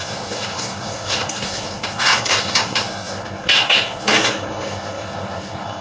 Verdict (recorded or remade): remade